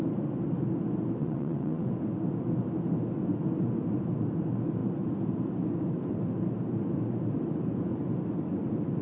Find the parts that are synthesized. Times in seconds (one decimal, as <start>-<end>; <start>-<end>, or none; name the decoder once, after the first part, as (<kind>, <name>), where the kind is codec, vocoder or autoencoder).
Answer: 1.2-1.9 (vocoder, WaveNeXt)

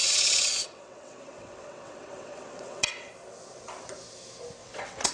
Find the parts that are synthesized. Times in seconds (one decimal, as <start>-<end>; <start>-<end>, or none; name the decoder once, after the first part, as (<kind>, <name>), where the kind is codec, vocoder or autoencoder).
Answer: 0.0-3.1 (vocoder, WaveNeXt); 4.6-5.1

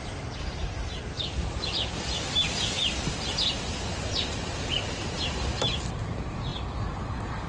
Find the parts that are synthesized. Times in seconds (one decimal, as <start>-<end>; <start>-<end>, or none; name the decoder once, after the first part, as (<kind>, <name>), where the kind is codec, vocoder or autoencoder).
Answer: none

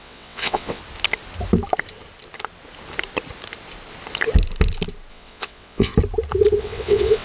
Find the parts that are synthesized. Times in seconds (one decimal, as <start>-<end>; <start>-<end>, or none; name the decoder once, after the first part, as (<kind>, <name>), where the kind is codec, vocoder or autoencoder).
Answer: 0.0-0.8 (vocoder, WaveNeXt); 5.1-5.9; 6.6-7.2

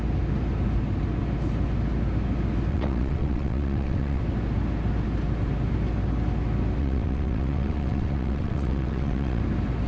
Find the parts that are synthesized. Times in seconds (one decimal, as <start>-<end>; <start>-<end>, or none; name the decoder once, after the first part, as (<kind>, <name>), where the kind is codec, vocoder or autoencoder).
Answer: 2.7-4.2 (vocoder, WaveNeXt); 6.8-9.4